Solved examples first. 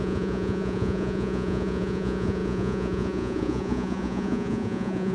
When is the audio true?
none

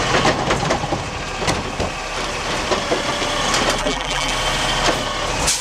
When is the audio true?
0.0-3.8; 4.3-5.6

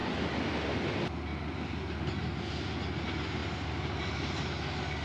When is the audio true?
0.0-5.0

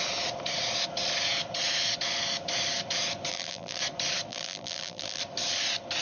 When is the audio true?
0.0-3.3; 3.8-4.3; 5.2-6.0

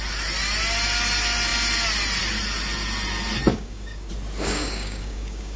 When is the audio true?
0.0-3.5; 4.1-4.5

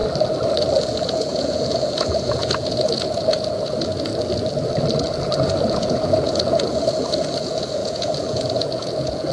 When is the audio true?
0.0-0.8; 4.1-5.7

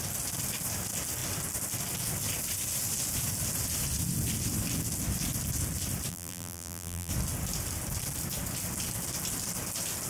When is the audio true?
0.0-6.1; 7.1-10.1

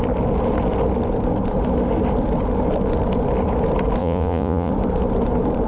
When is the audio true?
0.0-4.0; 4.7-5.7